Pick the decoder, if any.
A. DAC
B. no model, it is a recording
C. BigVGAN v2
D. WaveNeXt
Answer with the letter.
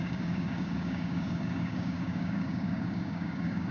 A